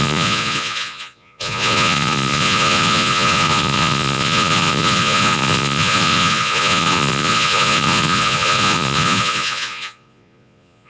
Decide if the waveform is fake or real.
fake